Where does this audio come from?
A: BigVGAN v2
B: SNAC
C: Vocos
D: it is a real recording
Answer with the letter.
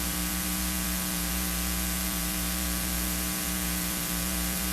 A